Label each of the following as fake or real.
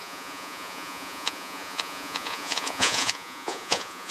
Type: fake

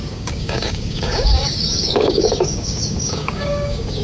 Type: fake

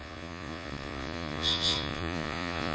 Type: fake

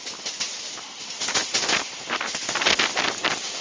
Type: real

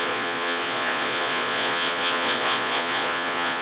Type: fake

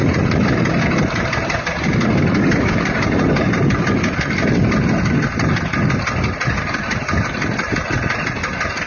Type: real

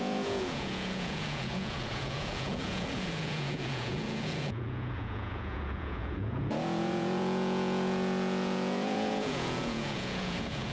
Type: fake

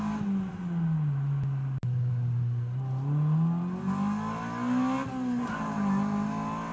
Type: real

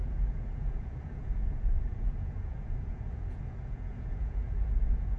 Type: fake